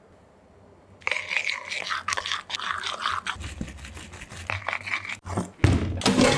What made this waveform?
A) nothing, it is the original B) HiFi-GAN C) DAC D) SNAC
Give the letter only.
A